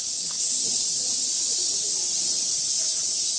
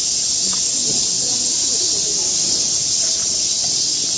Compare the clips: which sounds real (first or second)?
second